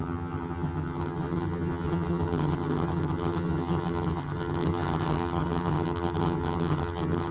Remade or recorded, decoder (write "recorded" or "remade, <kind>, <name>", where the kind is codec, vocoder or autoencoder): remade, vocoder, HiFi-GAN